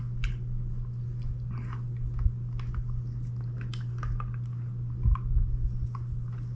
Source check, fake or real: real